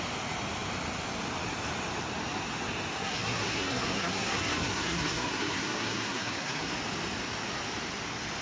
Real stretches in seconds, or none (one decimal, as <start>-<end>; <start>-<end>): 0.0-3.0; 6.7-8.4